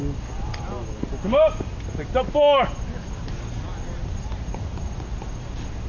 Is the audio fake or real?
real